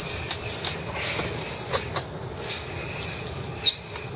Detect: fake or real real